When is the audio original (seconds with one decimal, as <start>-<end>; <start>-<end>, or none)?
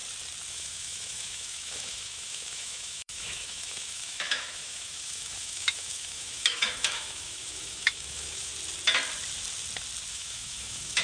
0.0-0.5; 8.5-10.1